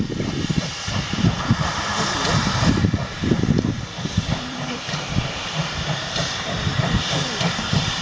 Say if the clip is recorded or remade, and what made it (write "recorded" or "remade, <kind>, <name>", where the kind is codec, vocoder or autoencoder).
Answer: remade, vocoder, BigVGAN v2